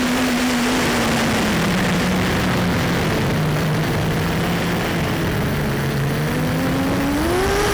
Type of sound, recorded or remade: recorded